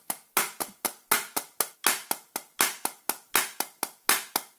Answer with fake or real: real